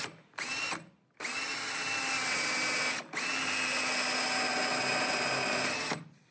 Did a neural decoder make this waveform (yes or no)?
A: no